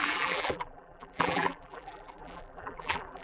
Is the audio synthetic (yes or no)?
yes